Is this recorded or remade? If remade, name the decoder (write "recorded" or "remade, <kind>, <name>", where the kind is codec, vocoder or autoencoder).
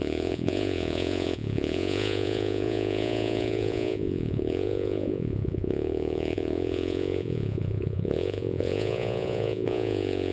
remade, vocoder, Vocos